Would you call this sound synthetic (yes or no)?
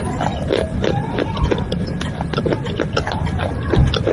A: no